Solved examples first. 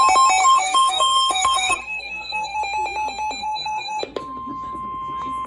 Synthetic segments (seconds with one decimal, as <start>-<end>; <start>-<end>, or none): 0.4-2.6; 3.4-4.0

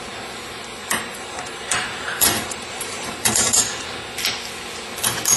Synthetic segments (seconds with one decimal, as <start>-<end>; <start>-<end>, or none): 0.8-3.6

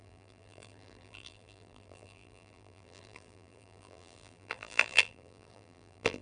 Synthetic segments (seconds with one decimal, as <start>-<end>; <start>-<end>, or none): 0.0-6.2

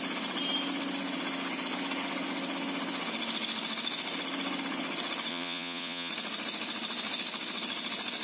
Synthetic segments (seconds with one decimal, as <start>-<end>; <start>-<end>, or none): 5.3-6.1

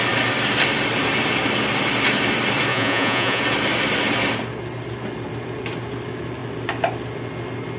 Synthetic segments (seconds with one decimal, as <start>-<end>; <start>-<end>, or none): 2.7-3.4

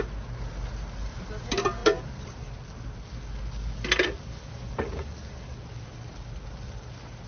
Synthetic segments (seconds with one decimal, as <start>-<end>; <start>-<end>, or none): none

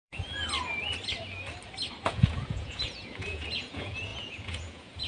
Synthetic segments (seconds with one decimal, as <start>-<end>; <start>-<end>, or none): 0.0-0.4; 2.1-5.1